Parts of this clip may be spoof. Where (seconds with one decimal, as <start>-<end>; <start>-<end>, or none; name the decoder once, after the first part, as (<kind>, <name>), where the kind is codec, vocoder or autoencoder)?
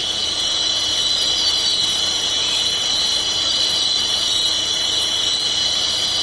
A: 0.0-0.8 (vocoder, Vocos); 1.7-5.3